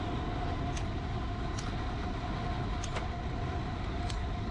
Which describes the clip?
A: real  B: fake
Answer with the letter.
A